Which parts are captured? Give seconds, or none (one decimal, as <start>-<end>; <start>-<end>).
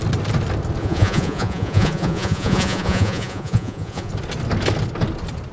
0.0-0.8; 4.1-5.5